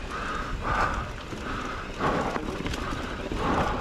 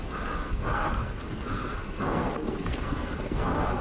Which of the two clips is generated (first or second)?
second